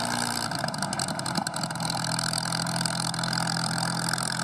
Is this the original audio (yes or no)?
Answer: no